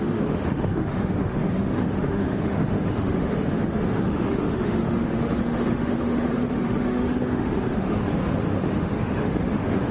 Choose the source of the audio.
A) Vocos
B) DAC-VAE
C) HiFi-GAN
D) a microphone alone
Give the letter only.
B